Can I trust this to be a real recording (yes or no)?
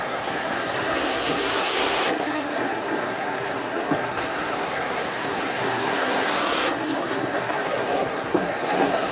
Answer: no